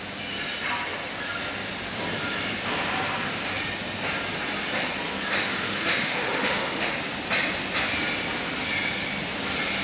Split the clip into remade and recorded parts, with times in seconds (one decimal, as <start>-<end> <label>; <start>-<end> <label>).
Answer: 0.0-5.4 recorded; 5.4-6.9 remade; 6.9-9.8 recorded